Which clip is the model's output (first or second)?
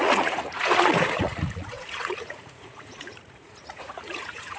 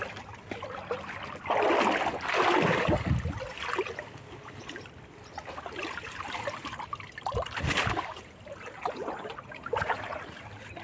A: first